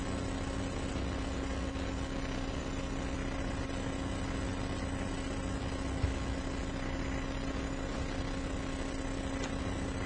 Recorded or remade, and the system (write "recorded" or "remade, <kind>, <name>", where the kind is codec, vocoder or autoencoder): recorded